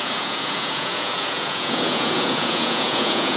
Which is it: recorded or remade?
remade